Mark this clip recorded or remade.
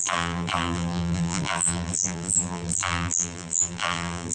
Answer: remade